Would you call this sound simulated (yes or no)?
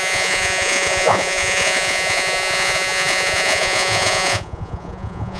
yes